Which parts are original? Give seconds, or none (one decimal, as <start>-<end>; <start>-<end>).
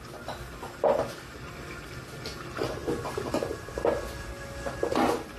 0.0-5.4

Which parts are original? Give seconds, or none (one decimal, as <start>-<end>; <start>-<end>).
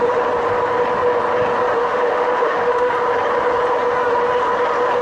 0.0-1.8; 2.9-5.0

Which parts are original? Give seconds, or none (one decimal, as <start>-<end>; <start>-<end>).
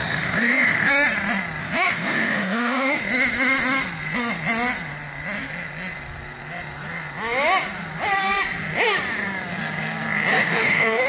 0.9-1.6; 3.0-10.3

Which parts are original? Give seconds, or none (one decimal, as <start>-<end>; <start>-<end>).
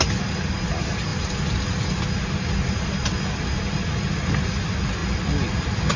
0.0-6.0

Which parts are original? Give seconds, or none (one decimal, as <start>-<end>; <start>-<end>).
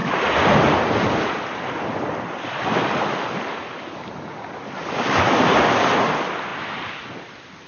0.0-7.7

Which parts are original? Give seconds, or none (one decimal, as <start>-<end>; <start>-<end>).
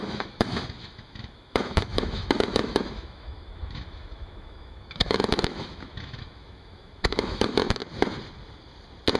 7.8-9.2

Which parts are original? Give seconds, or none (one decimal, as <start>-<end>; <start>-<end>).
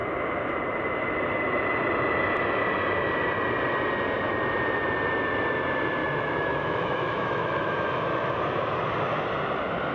0.0-6.0; 8.4-9.9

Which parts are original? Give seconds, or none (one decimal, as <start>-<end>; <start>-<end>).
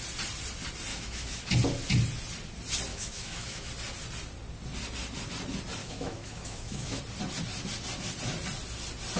0.0-0.9; 1.5-2.9; 3.7-5.8; 7.0-9.2